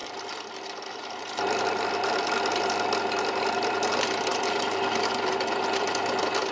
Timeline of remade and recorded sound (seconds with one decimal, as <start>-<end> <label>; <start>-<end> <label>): 0.0-3.9 remade; 3.9-4.3 recorded; 4.3-5.9 remade; 5.9-6.5 recorded